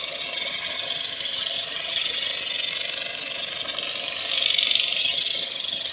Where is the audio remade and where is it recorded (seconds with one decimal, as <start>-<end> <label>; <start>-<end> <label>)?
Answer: 0.0-2.3 remade; 2.3-5.0 recorded; 5.0-5.9 remade